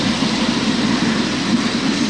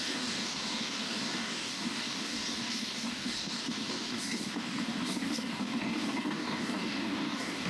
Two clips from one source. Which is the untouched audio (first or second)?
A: first